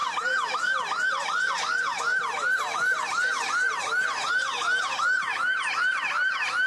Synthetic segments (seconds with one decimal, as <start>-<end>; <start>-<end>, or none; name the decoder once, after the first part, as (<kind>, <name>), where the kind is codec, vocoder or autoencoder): none